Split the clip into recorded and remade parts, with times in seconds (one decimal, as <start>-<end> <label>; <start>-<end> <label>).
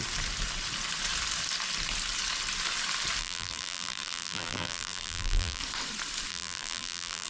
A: 0.0-3.2 recorded; 3.2-5.6 remade; 5.6-6.3 recorded; 6.3-7.3 remade